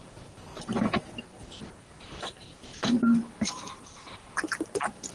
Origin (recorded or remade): remade